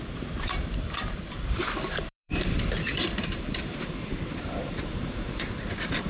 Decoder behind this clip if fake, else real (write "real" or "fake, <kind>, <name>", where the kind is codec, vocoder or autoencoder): fake, vocoder, BigVGAN v2